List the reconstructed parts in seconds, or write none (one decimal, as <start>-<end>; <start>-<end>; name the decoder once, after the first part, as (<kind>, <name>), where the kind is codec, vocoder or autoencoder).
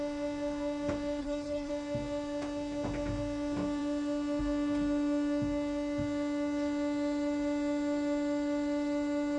1.2-1.7 (codec, SNAC)